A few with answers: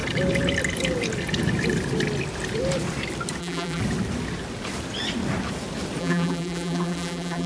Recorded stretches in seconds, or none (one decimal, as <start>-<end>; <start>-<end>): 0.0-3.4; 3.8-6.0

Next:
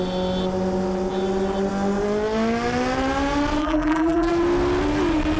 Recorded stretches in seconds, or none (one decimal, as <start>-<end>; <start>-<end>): 0.0-3.6; 4.3-5.4

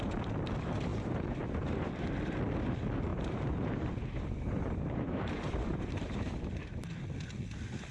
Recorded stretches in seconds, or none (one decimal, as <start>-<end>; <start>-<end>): 0.0-0.9; 1.9-3.1; 6.6-7.9